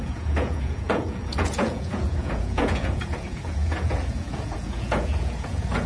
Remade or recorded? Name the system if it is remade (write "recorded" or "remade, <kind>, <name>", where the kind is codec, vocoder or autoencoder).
remade, vocoder, Vocos